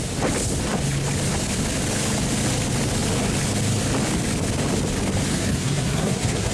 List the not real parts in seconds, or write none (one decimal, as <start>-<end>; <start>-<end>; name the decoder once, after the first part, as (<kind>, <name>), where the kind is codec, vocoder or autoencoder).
5.3-6.5 (codec, SNAC)